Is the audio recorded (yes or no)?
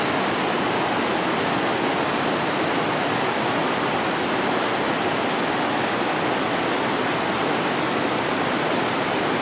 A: yes